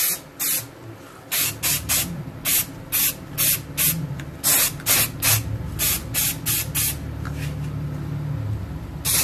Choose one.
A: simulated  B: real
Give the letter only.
B